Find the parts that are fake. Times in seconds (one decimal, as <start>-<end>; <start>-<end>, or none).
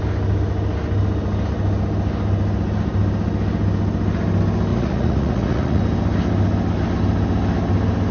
4.7-5.8